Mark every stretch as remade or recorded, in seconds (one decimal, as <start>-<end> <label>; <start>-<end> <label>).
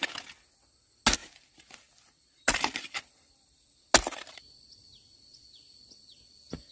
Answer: 0.0-6.7 recorded